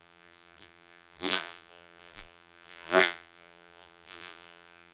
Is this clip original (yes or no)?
no